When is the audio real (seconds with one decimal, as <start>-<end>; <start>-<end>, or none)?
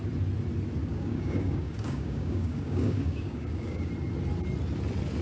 0.0-0.8; 3.9-5.2